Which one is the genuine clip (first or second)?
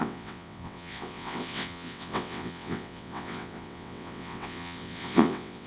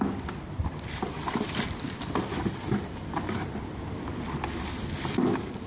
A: second